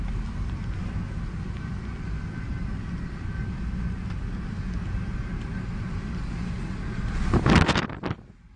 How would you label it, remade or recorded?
recorded